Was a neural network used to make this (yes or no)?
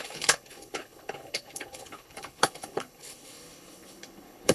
yes